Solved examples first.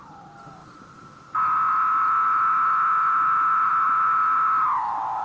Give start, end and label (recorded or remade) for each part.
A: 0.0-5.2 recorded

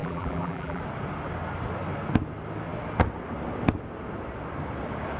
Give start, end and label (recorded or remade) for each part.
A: 0.0-0.8 remade; 0.8-5.2 recorded